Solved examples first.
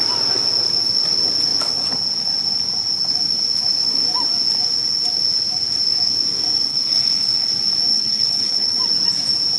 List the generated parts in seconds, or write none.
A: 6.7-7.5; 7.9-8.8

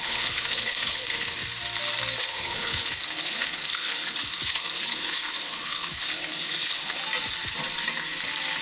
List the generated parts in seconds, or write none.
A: 0.0-1.4; 2.2-7.0

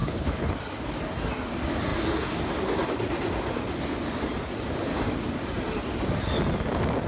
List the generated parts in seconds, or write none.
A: 0.0-0.5

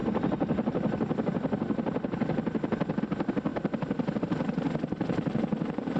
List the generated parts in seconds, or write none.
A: none

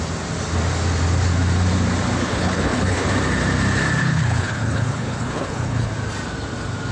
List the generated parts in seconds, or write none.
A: 2.2-3.1; 4.0-5.9

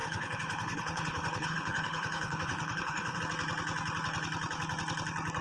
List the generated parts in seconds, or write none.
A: 0.0-3.2